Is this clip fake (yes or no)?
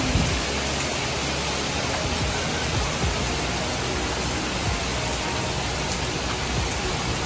no